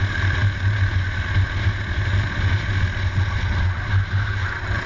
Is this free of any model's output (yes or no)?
yes